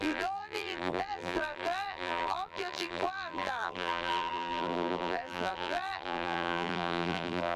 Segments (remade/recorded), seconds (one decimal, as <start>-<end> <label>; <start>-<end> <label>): 0.0-7.6 remade